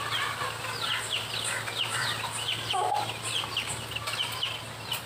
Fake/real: real